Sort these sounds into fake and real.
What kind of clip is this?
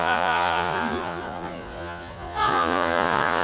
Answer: fake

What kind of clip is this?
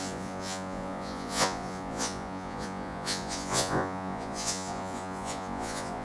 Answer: fake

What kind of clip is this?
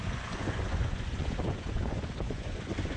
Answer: fake